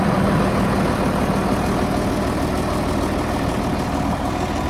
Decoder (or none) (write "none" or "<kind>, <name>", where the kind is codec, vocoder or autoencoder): none